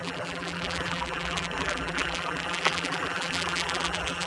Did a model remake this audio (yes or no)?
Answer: yes